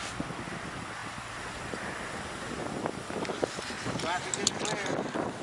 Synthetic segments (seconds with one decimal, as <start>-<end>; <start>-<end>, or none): 1.0-4.2